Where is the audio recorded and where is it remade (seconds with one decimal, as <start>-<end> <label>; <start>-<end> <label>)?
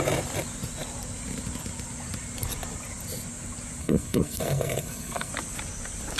0.0-3.8 recorded; 3.8-5.3 remade; 5.3-6.2 recorded